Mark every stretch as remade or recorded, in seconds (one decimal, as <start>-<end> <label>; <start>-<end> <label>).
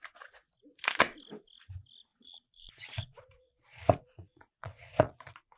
0.0-2.1 recorded; 2.1-5.6 remade